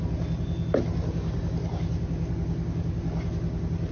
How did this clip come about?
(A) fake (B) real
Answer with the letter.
B